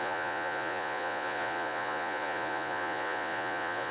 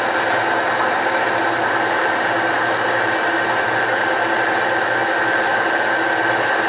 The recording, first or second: second